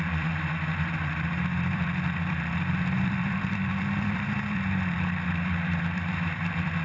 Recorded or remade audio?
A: remade